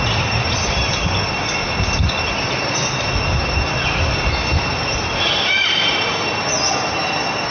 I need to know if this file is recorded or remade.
recorded